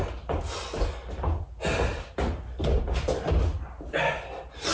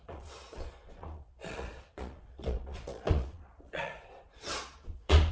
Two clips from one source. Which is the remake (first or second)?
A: second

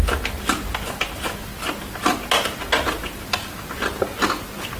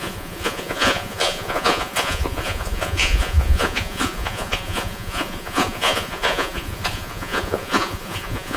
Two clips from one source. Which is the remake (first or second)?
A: second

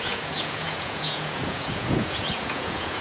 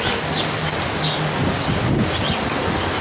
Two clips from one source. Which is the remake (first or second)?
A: first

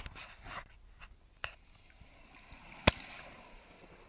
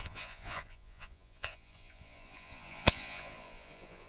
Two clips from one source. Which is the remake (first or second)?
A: second